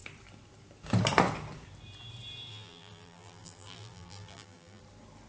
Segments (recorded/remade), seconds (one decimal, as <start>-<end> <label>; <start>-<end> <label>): 0.0-2.5 recorded; 2.5-4.8 remade; 4.8-5.3 recorded